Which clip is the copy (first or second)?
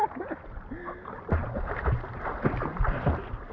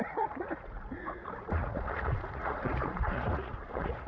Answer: second